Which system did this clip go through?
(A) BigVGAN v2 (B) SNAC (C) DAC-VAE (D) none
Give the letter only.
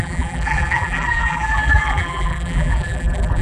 A